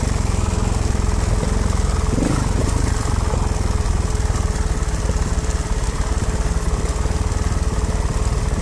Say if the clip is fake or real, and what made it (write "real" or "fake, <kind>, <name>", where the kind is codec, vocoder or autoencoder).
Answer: real